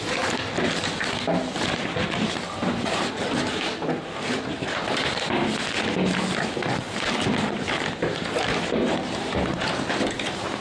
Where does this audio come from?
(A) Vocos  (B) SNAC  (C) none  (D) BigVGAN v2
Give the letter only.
C